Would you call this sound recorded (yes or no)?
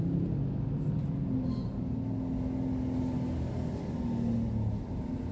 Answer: yes